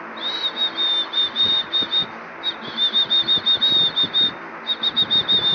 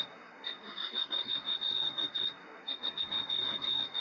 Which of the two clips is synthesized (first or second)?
second